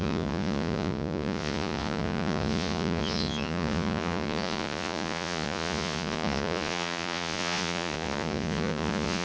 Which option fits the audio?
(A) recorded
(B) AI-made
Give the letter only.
B